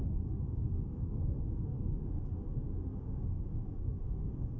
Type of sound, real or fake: fake